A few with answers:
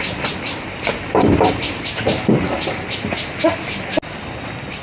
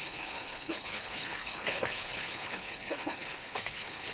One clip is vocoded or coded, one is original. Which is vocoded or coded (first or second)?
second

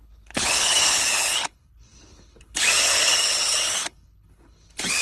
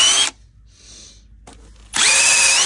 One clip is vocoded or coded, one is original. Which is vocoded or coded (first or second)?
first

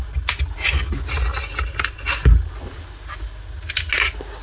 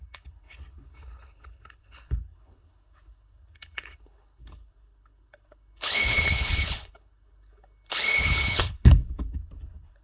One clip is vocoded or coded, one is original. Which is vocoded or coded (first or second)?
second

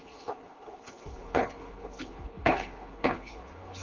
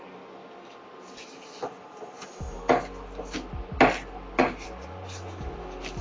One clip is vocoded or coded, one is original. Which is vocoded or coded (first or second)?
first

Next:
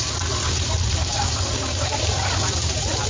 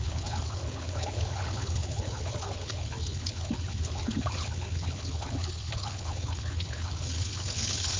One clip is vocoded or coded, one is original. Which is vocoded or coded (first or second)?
second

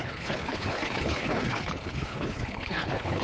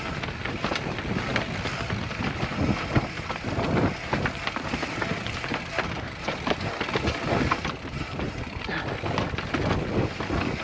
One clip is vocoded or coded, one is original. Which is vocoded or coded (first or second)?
first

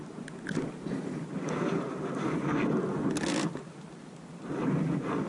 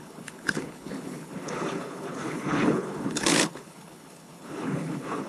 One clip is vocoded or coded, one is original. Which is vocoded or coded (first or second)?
second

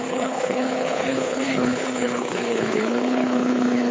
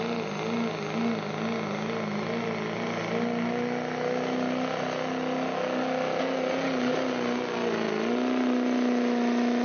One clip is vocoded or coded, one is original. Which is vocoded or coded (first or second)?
first